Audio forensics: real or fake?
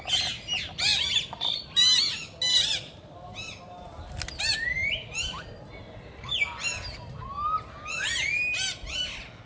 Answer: real